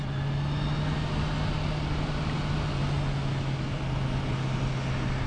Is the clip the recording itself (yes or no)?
yes